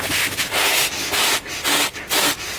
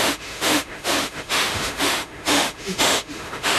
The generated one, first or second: second